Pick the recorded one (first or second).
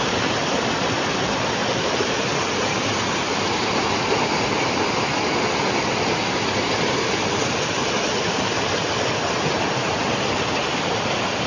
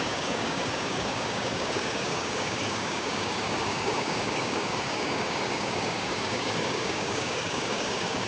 first